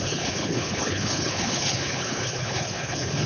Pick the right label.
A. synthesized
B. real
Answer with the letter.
A